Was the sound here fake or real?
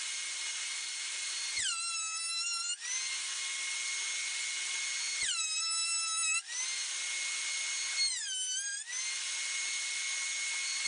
real